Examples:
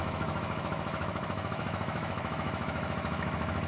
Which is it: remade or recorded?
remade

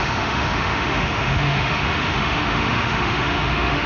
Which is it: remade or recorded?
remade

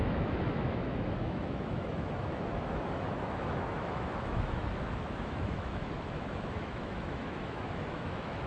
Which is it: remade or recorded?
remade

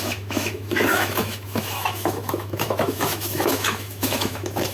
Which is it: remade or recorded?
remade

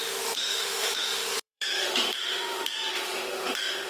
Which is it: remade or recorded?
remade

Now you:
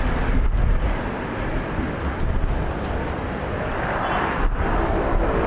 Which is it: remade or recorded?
recorded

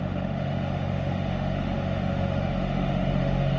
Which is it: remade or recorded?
remade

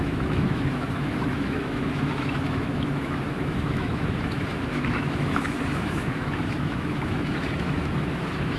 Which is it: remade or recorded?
remade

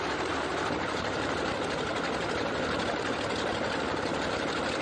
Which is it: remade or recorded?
recorded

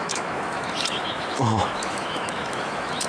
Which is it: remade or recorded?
remade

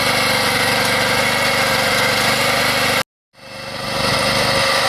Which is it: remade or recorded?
recorded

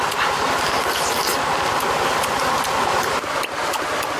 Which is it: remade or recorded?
recorded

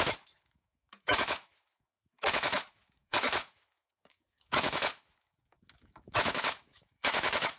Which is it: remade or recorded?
remade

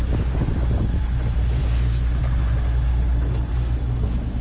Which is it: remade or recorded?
recorded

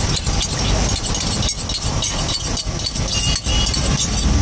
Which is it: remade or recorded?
recorded